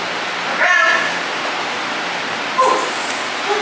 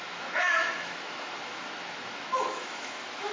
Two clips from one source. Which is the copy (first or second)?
second